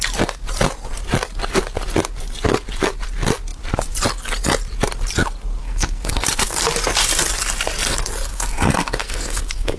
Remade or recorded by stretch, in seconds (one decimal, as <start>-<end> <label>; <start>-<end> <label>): 0.0-5.6 recorded; 5.6-6.6 remade; 6.6-8.3 recorded; 8.3-9.8 remade